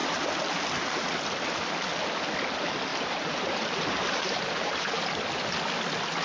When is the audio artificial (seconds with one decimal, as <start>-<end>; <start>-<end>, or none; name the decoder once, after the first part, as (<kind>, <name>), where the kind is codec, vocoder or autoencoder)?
2.9-4.7 (vocoder, BigVGAN v2)